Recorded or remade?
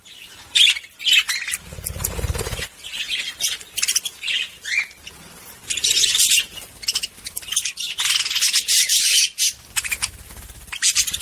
recorded